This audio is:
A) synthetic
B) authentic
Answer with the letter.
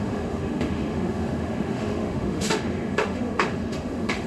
A